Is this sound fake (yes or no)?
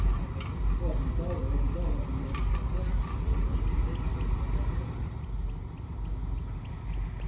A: no